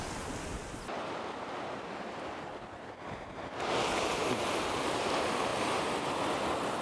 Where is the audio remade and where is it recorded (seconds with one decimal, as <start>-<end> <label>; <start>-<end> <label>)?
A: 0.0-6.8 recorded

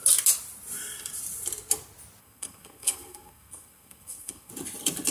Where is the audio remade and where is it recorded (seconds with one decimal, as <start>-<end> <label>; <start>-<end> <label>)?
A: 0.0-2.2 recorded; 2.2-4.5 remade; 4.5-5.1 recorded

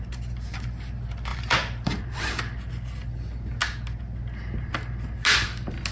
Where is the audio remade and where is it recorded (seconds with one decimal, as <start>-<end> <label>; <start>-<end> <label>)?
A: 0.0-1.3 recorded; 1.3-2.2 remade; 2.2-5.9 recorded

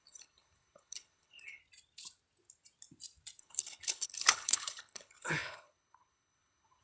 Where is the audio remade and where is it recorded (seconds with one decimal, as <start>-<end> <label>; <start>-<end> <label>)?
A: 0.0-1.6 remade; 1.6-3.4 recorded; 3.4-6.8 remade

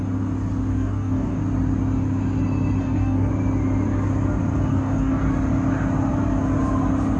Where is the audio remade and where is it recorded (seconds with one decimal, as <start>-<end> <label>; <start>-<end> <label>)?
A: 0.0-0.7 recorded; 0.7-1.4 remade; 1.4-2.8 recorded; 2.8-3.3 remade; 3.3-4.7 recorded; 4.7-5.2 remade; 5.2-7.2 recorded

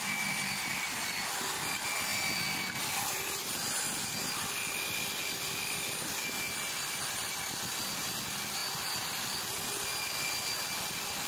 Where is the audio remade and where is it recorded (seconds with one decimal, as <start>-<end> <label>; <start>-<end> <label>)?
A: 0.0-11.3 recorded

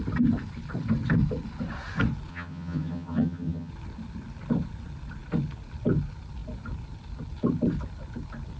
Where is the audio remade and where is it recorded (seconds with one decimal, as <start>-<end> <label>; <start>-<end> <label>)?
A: 0.0-2.3 recorded; 2.3-3.7 remade; 3.7-8.6 recorded